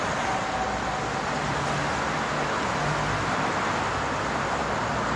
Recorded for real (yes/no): yes